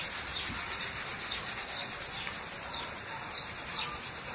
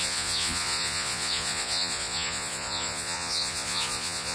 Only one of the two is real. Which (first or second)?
first